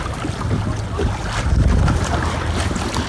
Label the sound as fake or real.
real